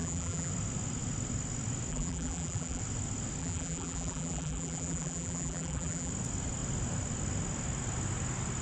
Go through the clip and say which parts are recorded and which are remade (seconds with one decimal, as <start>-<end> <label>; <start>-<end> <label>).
0.0-0.5 remade; 0.5-1.9 recorded; 1.9-2.8 remade; 2.8-3.4 recorded; 3.4-6.1 remade; 6.1-8.6 recorded